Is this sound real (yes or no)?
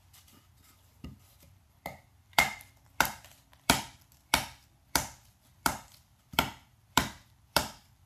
no